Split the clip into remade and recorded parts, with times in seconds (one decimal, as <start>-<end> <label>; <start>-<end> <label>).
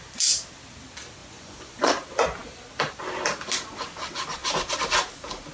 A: 0.0-1.2 recorded; 1.2-1.9 remade; 1.9-5.5 recorded